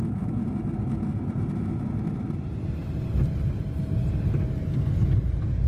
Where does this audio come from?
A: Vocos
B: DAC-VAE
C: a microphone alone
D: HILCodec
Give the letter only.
C